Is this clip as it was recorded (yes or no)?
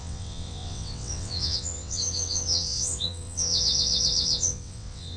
no